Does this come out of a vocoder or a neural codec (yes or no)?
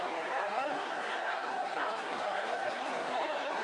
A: yes